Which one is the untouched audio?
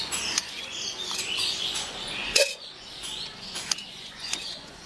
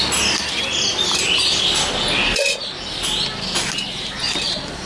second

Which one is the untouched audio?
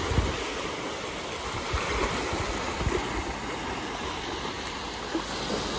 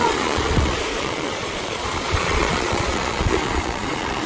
first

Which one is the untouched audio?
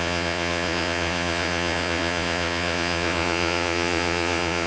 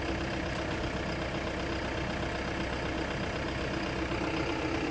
second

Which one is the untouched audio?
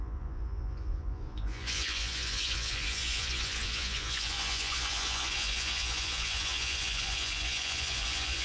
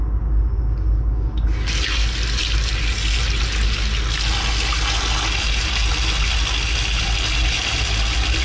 second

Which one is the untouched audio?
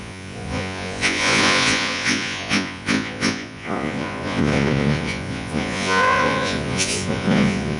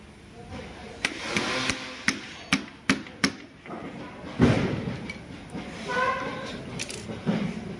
second